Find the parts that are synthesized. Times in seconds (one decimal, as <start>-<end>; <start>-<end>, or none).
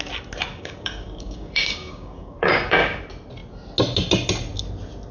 0.5-3.0